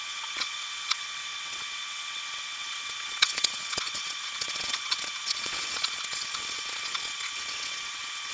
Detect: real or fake fake